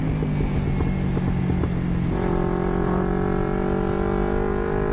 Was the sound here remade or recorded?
recorded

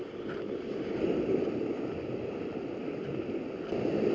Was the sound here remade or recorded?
recorded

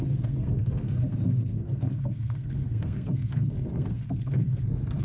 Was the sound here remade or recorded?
remade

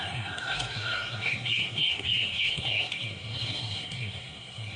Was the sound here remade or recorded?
remade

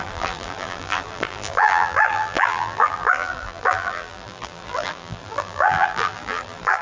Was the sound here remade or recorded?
remade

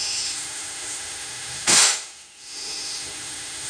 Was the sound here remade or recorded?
remade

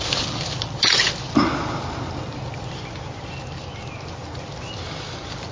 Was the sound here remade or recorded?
recorded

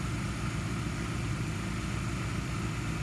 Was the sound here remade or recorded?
recorded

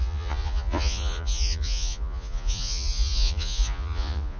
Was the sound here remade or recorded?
remade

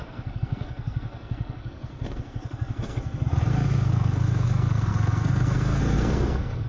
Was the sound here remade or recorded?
remade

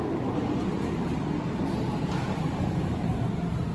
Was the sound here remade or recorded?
recorded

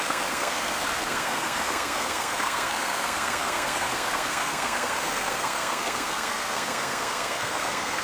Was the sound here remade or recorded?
remade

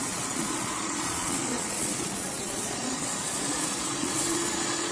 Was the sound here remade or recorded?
remade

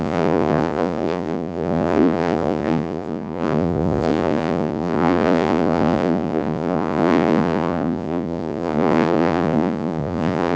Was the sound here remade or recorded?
remade